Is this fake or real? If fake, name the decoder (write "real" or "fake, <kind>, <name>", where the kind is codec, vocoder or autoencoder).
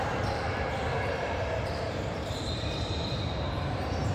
fake, vocoder, BigVGAN v2